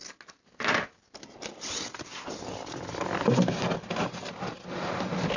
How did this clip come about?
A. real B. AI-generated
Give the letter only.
A